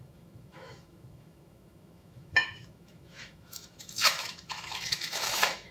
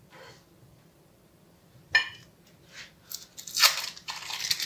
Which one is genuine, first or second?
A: second